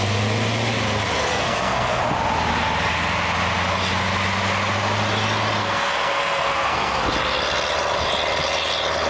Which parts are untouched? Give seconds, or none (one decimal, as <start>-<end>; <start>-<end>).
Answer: 0.0-1.3; 2.0-5.6; 7.0-9.1